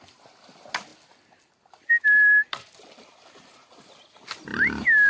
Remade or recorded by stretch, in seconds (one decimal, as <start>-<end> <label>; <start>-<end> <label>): 0.0-5.1 recorded